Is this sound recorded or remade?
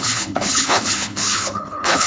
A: remade